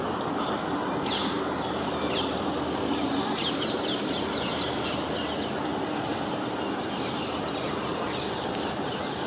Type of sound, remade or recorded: recorded